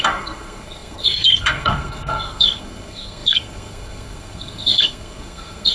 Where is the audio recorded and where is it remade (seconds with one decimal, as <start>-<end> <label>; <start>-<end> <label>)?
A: 0.0-5.7 remade